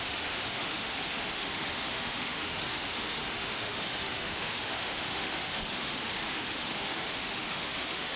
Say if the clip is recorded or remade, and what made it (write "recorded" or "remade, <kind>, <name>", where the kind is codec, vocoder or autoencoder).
remade, autoencoder, DAC-VAE